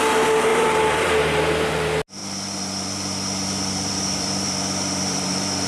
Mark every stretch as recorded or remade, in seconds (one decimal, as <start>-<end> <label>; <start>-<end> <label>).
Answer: 0.0-0.5 recorded; 0.5-1.2 remade; 1.2-2.2 recorded; 2.2-5.7 remade